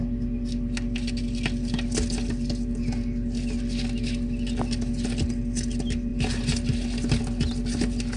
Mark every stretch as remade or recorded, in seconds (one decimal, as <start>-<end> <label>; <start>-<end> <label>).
0.0-8.2 recorded